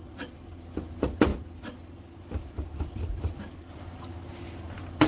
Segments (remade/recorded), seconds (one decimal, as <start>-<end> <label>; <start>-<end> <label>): 0.0-1.3 recorded; 1.3-4.4 remade; 4.4-5.1 recorded